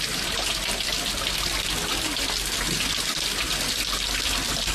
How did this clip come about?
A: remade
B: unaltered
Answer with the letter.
B